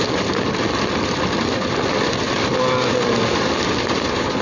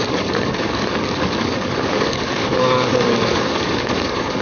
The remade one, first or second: second